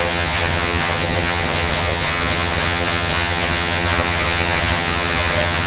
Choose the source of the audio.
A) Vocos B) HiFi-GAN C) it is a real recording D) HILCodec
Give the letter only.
B